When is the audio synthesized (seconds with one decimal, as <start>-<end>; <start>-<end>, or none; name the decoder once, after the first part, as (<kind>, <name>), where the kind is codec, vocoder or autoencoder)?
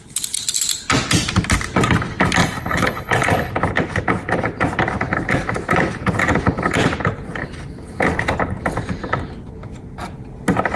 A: 2.4-3.5 (codec, HILCodec)